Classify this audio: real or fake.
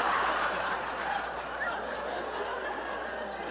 real